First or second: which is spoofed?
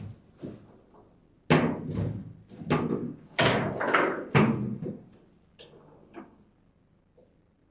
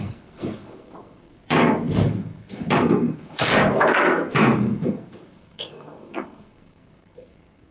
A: second